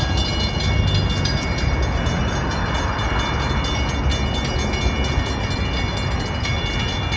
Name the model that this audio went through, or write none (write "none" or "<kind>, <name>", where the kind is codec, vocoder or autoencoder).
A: none